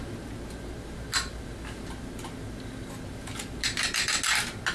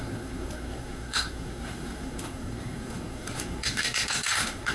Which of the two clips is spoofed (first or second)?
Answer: second